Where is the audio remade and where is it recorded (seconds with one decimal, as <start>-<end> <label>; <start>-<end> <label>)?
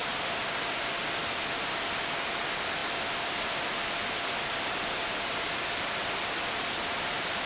0.0-7.5 recorded